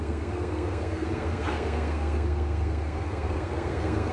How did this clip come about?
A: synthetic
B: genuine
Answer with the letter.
A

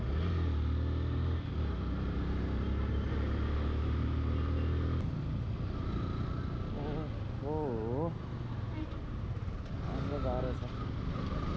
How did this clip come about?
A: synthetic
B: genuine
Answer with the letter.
B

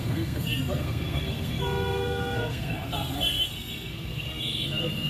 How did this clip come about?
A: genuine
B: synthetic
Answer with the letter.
B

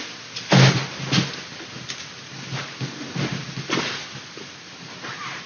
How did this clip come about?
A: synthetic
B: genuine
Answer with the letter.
B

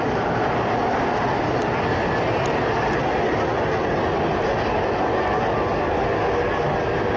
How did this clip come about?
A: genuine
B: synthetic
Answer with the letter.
A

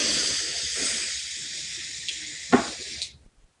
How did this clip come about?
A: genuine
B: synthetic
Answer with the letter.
A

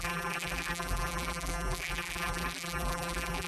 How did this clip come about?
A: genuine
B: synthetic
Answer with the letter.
B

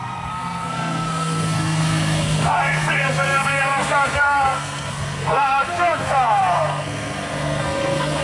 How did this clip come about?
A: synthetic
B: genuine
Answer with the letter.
A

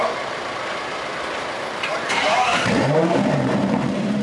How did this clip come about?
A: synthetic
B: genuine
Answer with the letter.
A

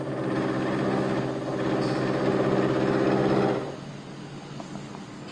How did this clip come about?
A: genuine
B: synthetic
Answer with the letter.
A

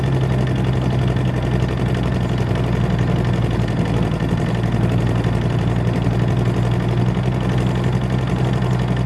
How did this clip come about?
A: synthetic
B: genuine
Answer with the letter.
B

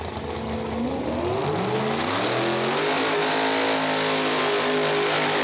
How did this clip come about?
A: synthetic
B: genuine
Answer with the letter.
B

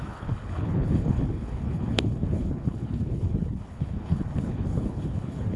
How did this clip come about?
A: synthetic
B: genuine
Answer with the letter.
A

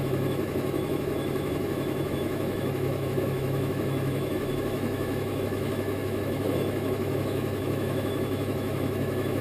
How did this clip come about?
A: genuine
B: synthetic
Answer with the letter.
B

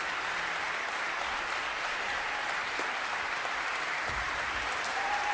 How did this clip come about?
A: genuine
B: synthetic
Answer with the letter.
B